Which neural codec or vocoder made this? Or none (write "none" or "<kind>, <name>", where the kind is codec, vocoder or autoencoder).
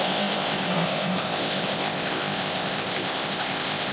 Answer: codec, ZipCodec